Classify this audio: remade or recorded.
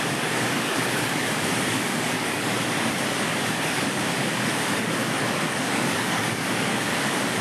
remade